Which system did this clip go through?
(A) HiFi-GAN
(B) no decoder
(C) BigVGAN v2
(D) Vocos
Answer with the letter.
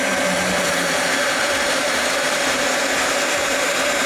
C